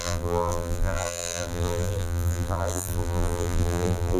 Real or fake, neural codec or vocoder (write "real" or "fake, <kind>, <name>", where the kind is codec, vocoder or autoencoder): fake, vocoder, BigVGAN v2